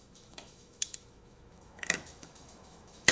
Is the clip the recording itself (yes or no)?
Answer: no